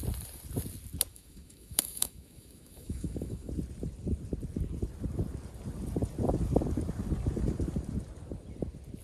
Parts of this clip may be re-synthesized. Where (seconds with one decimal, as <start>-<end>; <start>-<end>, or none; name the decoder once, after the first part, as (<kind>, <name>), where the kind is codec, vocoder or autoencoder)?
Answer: 1.1-3.5 (autoencoder, DAC-VAE)